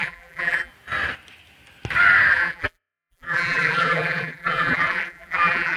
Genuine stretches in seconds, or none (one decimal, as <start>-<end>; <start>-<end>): 0.7-2.3